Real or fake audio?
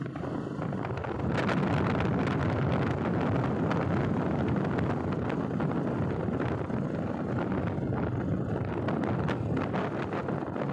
real